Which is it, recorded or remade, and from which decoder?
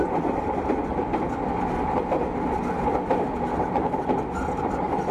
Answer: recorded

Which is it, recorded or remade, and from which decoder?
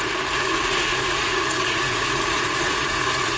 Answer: remade, vocoder, Vocos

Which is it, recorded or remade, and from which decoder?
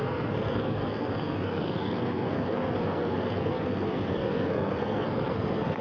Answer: remade, codec, SNAC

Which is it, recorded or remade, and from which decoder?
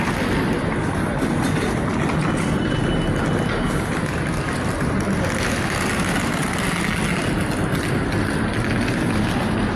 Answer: recorded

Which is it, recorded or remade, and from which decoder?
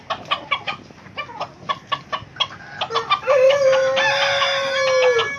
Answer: recorded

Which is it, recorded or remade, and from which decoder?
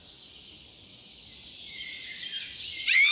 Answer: recorded